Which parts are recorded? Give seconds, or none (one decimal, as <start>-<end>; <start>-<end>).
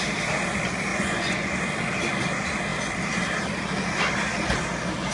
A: 0.0-0.9; 1.5-5.1